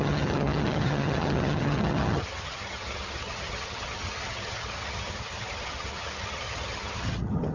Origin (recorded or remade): remade